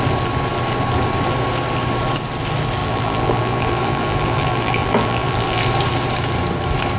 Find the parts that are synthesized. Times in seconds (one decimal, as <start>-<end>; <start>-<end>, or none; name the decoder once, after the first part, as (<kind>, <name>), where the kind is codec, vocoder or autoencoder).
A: 2.8-5.6 (vocoder, BigVGAN v2)